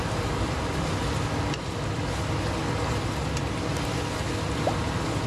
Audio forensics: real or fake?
real